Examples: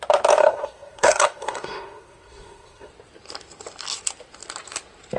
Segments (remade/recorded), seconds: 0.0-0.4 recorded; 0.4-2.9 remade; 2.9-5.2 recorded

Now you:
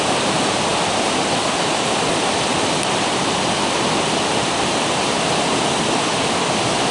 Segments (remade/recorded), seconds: 0.0-0.7 recorded; 0.7-2.1 remade; 2.1-6.9 recorded

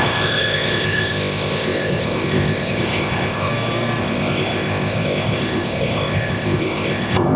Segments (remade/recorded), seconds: 0.0-3.5 remade; 3.5-4.0 recorded; 4.0-7.4 remade